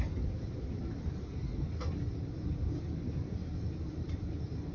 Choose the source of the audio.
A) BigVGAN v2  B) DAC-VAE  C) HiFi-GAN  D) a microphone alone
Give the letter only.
D